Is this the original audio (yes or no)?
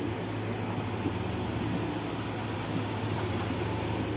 yes